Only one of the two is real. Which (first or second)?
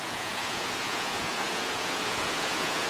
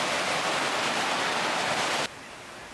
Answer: second